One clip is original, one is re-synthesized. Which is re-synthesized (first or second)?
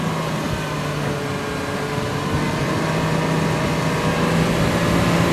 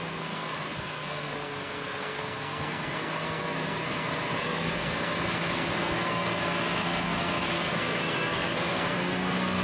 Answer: second